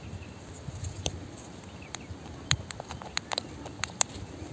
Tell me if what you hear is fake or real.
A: real